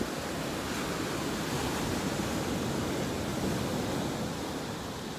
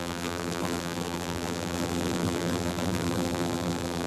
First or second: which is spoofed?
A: second